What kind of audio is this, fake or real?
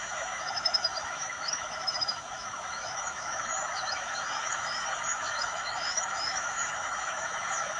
fake